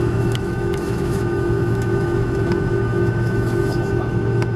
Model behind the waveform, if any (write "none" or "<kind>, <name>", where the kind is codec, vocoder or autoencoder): autoencoder, DAC-VAE